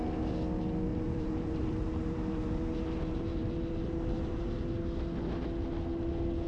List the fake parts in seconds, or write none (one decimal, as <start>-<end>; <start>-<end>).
0.9-4.8